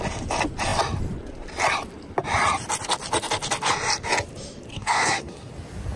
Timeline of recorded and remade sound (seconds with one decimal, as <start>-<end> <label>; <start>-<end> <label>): 0.0-4.7 recorded; 4.7-5.5 remade; 5.5-6.0 recorded